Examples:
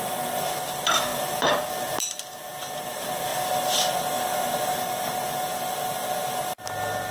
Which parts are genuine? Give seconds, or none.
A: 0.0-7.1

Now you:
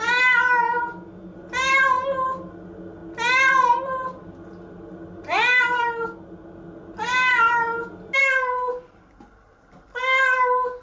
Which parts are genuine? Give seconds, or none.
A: 0.0-10.8

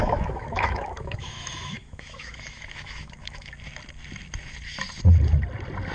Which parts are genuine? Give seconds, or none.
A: 3.5-5.9

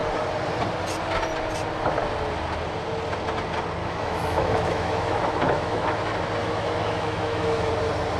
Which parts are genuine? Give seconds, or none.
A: 0.0-3.8; 6.0-6.4; 7.7-8.2

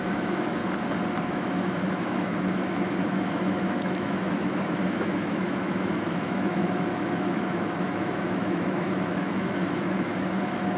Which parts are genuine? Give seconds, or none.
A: 0.6-1.3

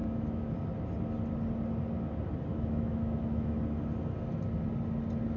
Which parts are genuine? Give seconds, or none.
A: 0.5-2.5; 3.6-5.4